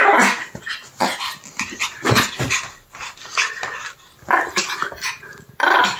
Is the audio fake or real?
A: real